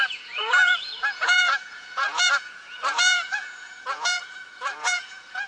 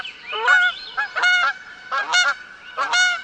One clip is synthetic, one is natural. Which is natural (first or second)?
second